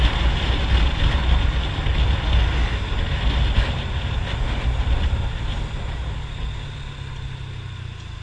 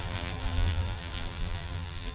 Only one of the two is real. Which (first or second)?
first